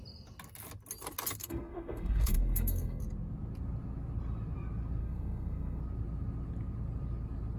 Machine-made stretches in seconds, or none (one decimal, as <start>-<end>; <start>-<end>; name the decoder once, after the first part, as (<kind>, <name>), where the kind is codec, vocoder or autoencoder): 1.4-3.0 (codec, SNAC); 5.0-5.8